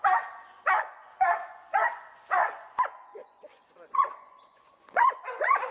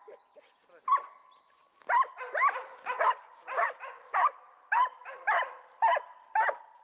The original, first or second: second